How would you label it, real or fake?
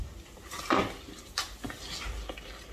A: real